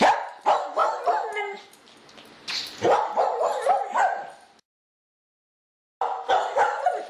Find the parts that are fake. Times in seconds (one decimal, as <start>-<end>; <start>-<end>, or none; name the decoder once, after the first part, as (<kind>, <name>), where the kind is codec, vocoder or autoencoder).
none